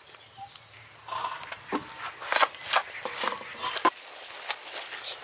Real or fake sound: real